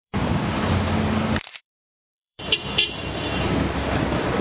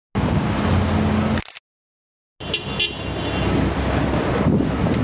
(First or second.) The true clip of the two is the second